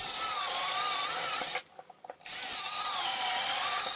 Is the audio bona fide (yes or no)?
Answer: yes